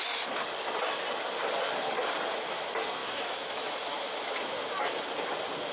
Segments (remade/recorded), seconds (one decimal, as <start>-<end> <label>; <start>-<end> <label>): 0.0-3.0 recorded; 3.0-4.3 remade; 4.3-5.7 recorded